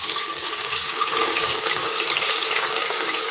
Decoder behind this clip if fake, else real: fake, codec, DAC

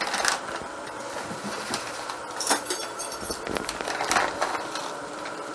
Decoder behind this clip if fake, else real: real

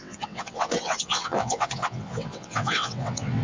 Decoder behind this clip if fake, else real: fake, vocoder, WaveNeXt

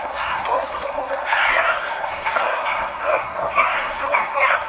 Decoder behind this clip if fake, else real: fake, codec, SNAC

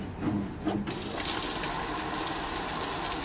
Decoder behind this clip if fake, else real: real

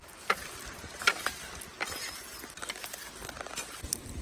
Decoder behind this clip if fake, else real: real